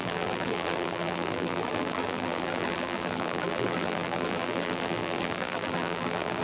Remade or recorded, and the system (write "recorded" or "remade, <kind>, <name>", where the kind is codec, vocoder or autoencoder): remade, vocoder, BigVGAN v2